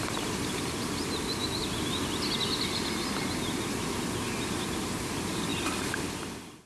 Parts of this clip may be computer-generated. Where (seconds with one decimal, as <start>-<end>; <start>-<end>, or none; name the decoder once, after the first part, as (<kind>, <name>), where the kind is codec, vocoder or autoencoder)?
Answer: 0.0-1.4 (vocoder, BigVGAN v2); 2.7-5.5